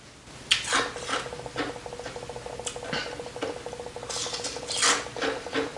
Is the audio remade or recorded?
recorded